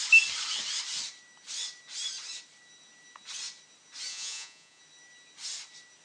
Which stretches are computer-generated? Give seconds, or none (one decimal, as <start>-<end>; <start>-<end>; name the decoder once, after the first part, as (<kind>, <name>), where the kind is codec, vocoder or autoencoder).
4.1-4.8 (vocoder, Vocos)